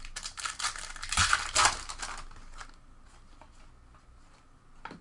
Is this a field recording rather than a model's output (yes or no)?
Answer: yes